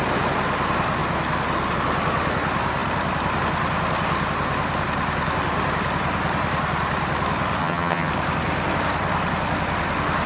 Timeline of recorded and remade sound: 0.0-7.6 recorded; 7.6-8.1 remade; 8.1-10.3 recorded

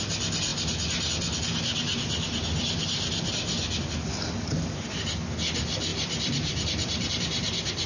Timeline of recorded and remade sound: 0.0-5.9 recorded; 5.9-7.9 remade

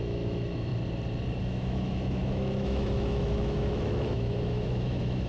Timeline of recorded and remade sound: 0.0-0.7 remade; 0.7-1.4 recorded; 1.4-5.3 remade

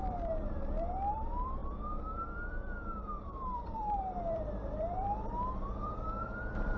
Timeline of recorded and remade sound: 0.0-6.8 remade

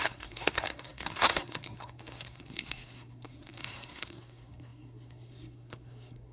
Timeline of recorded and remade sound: 0.0-6.3 remade

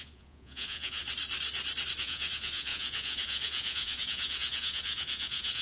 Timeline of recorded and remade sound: 0.0-1.0 remade; 1.0-2.0 recorded; 2.0-5.6 remade